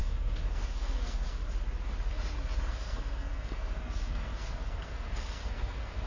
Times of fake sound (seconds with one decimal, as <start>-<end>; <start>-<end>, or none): 0.0-1.4; 2.7-6.1